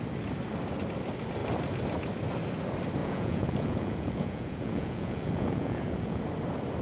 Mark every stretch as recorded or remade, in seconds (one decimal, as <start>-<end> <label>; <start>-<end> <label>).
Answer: 0.0-3.0 recorded; 3.0-6.2 remade; 6.2-6.8 recorded